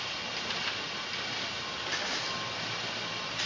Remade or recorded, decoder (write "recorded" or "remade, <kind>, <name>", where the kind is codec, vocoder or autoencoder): recorded